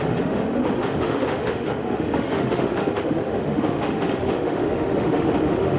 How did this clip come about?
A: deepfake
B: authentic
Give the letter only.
A